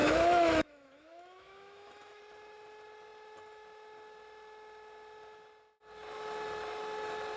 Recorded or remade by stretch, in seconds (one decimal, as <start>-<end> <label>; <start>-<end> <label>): 0.0-2.2 remade; 2.2-7.4 recorded